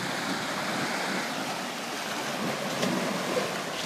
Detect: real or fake real